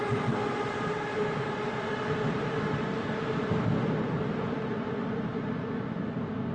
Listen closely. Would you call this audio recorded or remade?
recorded